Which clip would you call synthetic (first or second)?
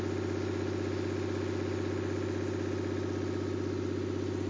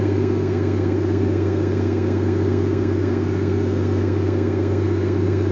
second